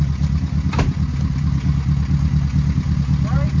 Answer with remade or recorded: recorded